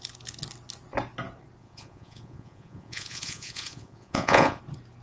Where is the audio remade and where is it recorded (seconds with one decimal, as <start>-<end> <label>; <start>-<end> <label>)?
0.0-1.6 recorded; 1.6-4.6 remade; 4.6-5.0 recorded